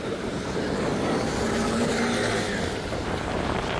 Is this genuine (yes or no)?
no